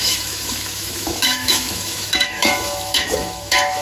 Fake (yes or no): yes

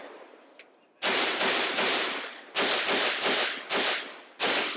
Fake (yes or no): no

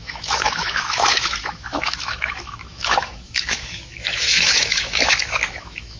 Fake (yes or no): yes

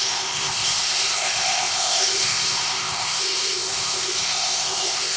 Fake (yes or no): yes